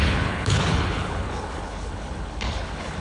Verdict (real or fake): fake